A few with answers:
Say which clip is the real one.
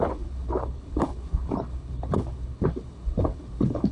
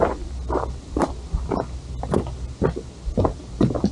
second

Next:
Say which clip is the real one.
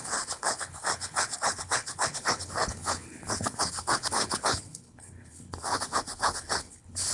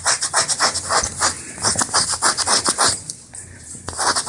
second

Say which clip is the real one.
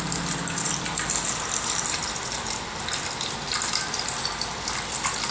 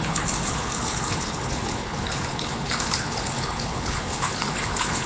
first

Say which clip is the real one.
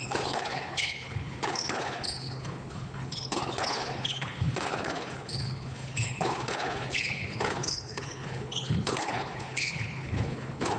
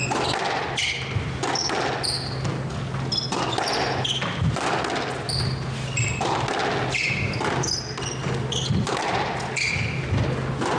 second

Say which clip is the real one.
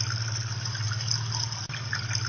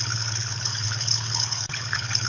first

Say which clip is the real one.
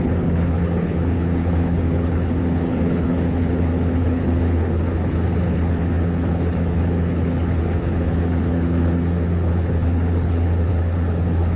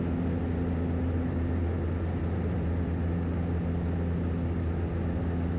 second